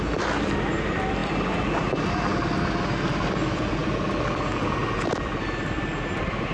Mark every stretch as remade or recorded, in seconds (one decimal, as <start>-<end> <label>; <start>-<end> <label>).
0.0-6.5 recorded